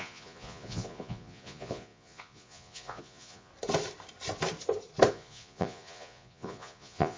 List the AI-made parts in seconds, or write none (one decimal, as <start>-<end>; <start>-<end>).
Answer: 0.0-3.5; 5.1-7.2